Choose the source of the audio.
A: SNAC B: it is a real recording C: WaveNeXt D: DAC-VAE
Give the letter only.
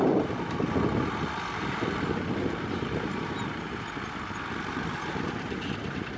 B